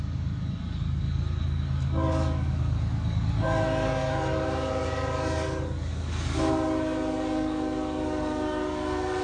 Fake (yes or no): yes